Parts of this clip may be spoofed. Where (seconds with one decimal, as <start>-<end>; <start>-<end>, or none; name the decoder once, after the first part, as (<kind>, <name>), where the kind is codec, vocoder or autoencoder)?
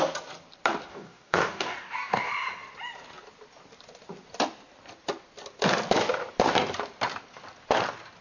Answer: 0.9-2.3 (codec, DAC)